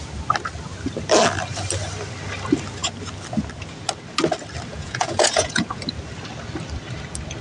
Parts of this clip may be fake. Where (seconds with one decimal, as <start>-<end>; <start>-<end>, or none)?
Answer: 4.7-5.8